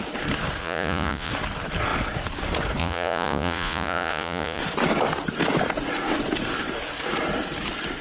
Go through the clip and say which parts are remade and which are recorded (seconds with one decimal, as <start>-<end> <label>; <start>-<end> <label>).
0.0-0.6 recorded; 0.6-1.3 remade; 1.3-2.8 recorded; 2.8-4.6 remade; 4.6-8.0 recorded